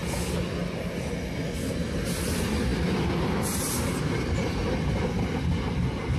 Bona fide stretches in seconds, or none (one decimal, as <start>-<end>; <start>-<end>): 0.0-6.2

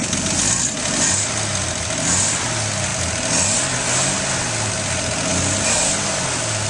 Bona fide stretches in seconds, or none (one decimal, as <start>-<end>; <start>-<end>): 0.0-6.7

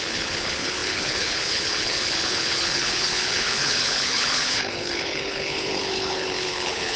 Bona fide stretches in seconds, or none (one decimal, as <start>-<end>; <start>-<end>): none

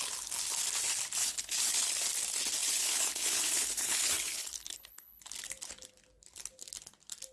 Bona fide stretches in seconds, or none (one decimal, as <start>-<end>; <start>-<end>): 0.0-1.2; 1.9-2.6; 5.2-7.3

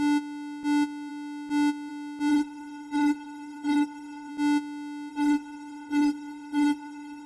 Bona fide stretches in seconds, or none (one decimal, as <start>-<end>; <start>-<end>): 0.0-2.3; 4.3-5.1